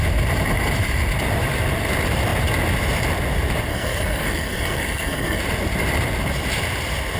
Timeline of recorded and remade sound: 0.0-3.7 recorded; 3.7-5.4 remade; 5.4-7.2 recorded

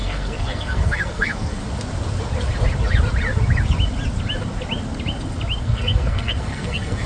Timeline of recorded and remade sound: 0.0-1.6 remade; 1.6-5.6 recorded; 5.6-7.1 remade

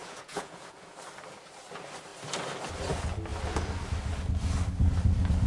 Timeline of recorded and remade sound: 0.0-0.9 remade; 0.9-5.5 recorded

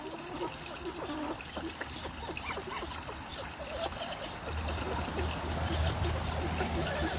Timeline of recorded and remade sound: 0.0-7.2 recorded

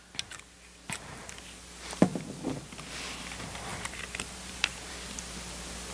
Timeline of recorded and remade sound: 0.0-3.7 recorded; 3.7-4.9 remade; 4.9-5.9 recorded

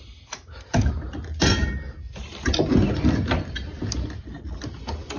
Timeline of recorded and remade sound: 0.0-5.2 recorded

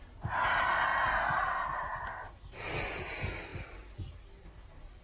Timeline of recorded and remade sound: 0.0-5.0 recorded